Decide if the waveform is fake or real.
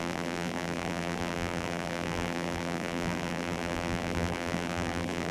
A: fake